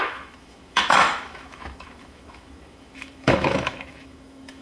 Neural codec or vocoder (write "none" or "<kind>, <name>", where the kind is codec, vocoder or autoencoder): autoencoder, DAC-VAE